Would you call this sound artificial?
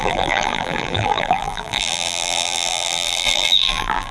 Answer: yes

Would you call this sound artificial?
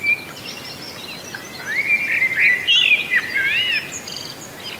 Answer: no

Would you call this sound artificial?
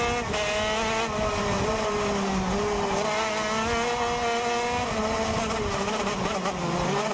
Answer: no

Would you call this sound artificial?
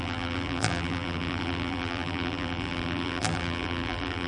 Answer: yes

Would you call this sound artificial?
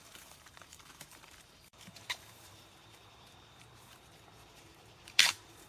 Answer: yes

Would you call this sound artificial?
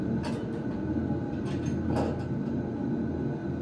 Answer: no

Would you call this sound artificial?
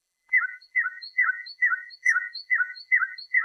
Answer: yes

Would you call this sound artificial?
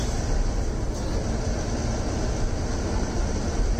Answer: no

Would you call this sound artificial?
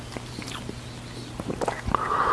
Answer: no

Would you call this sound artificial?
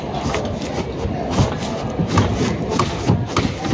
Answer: no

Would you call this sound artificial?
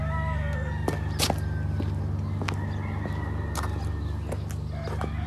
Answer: no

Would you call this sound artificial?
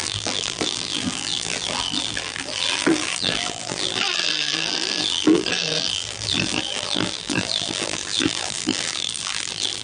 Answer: yes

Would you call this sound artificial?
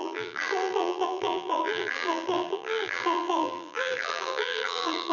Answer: yes